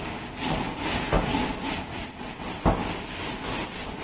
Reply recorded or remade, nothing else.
recorded